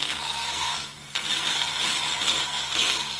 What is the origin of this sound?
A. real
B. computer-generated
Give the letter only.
B